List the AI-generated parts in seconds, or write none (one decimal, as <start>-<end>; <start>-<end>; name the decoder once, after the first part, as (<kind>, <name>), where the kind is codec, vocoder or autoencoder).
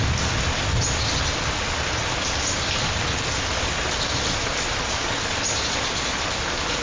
none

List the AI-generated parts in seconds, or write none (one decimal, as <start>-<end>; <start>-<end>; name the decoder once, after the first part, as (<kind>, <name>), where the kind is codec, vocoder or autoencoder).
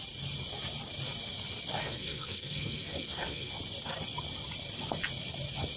1.8-3.5 (codec, SNAC)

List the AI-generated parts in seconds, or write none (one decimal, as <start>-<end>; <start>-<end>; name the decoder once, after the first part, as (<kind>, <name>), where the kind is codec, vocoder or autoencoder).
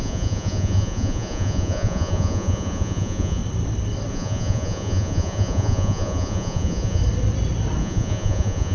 0.0-3.4 (vocoder, Vocos); 4.1-7.0; 7.8-8.7